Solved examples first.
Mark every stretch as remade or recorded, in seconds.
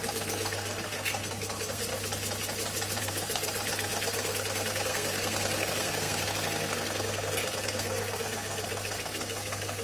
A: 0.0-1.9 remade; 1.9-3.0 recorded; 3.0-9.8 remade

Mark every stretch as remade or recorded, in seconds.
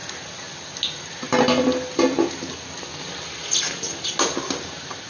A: 0.0-5.1 recorded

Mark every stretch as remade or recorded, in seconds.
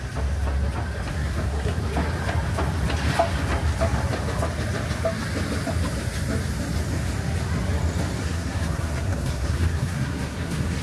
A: 0.0-1.1 recorded; 1.1-1.8 remade; 1.8-8.2 recorded; 8.2-10.8 remade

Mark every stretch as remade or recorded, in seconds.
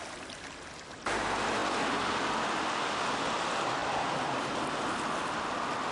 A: 0.0-5.9 recorded